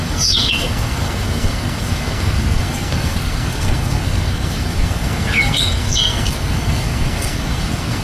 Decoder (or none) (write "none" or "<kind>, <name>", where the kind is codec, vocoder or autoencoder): codec, SNAC